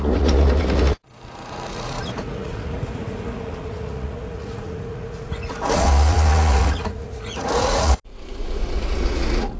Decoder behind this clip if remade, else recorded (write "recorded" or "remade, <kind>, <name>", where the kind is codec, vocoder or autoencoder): remade, vocoder, Vocos